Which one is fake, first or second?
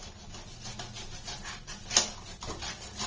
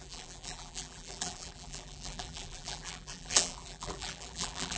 second